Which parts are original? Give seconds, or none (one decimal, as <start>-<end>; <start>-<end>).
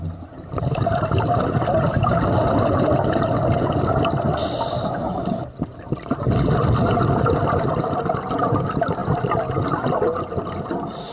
0.0-11.1